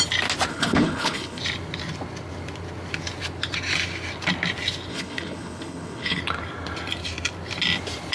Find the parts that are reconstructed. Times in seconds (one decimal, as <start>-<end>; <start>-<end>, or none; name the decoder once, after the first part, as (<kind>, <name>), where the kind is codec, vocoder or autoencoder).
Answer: 0.5-1.4 (codec, HILCodec); 4.9-6.2